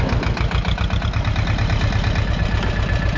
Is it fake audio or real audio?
real